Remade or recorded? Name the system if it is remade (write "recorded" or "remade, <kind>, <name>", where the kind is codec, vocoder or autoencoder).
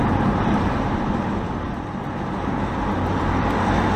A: recorded